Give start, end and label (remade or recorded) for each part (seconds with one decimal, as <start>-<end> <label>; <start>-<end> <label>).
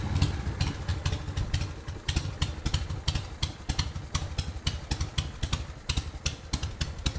0.0-7.2 recorded